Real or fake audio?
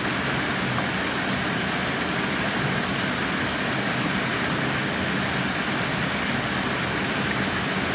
real